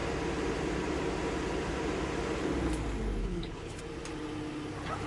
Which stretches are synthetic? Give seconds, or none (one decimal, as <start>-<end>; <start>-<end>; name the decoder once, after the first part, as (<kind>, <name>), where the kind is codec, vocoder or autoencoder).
3.2-3.8 (codec, HILCodec)